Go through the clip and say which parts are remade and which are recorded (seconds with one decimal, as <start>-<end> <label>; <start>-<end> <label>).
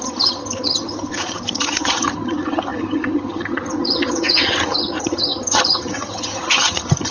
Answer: 0.0-7.1 remade